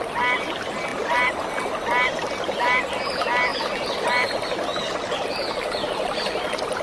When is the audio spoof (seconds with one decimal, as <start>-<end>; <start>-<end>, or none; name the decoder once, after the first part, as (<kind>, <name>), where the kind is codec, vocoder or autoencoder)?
none